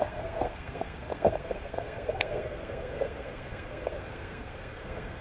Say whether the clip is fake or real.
fake